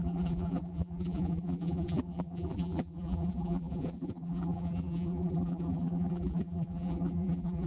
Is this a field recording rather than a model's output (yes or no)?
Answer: no